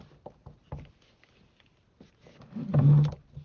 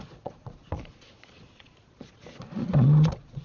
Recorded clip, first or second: first